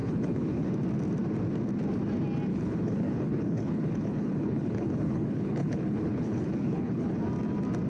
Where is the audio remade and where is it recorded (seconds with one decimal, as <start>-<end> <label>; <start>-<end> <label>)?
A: 0.0-0.7 remade; 0.7-2.5 recorded; 2.5-7.2 remade; 7.2-7.9 recorded